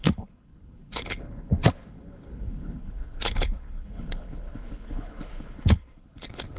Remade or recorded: remade